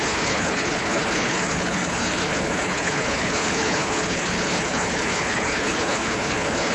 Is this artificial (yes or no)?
yes